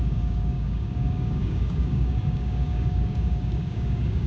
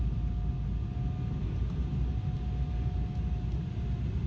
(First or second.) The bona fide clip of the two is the second